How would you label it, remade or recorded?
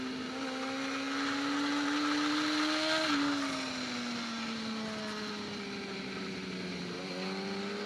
recorded